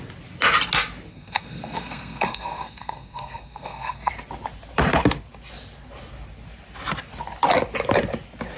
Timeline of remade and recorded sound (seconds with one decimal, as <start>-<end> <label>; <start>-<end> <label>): 0.0-1.1 recorded; 1.1-4.1 remade; 4.1-8.6 recorded